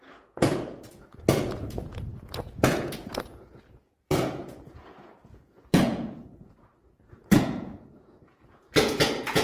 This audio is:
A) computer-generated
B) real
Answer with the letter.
A